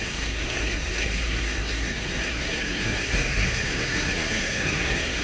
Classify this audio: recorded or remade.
remade